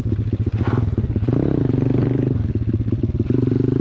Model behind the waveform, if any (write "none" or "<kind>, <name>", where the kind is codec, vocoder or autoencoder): none